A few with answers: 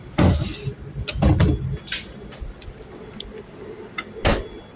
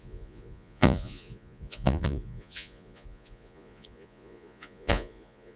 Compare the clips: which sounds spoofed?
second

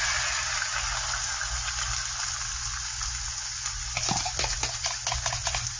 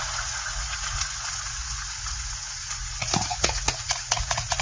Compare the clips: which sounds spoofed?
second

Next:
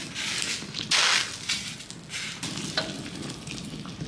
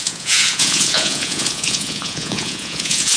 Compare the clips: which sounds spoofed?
second